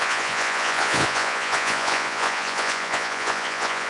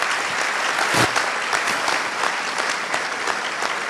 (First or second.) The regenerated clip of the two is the first